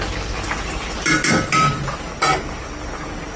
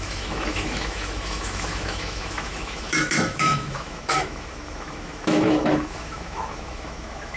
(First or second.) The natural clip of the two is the first